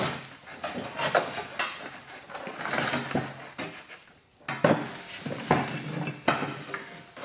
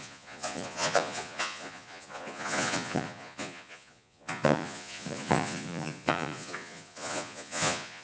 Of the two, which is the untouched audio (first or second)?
first